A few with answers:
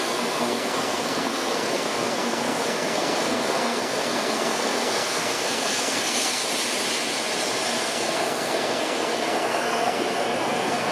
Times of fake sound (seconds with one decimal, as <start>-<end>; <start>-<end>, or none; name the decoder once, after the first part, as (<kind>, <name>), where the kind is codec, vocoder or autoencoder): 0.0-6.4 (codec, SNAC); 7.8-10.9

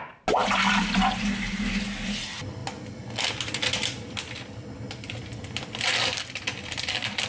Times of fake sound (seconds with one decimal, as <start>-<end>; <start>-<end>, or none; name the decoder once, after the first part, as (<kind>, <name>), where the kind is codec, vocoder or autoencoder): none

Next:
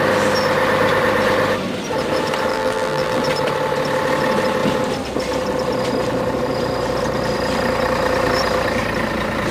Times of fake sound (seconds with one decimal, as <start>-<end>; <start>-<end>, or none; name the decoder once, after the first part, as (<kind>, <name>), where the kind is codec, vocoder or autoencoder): 2.5-3.2 (vocoder, BigVGAN v2)

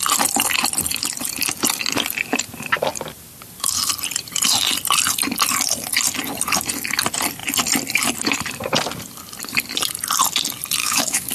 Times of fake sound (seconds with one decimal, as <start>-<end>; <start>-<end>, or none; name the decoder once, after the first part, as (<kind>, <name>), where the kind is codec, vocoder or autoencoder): 10.8-11.3 (autoencoder, DAC-VAE)

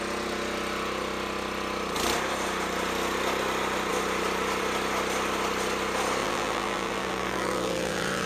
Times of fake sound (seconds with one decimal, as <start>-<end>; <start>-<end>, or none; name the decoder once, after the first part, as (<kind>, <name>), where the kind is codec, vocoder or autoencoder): 6.2-8.3 (vocoder, BigVGAN v2)

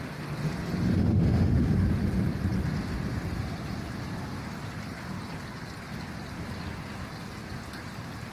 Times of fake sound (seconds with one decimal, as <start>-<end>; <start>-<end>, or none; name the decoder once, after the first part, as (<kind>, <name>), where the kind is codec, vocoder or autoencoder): 1.0-1.9 (autoencoder, DAC-VAE)